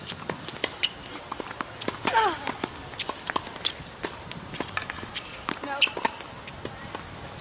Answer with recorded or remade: recorded